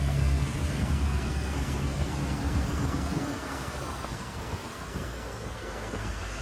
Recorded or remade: remade